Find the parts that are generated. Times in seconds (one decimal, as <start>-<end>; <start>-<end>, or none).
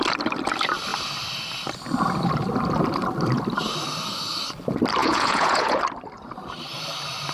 5.0-5.8